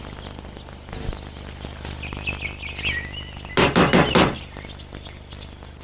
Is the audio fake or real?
real